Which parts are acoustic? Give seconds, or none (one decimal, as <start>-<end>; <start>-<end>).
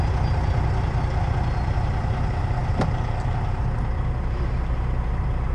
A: 0.0-5.5